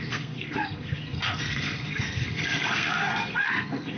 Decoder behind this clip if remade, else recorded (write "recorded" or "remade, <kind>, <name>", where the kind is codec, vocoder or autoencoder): remade, codec, SNAC